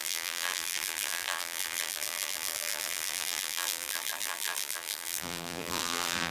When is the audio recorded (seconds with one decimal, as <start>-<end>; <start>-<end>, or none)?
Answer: none